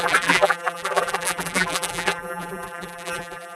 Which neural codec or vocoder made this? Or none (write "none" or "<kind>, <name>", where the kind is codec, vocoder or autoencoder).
vocoder, BigVGAN v2